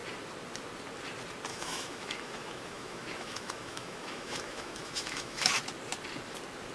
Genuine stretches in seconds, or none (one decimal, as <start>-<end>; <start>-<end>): 0.0-1.5; 5.5-6.7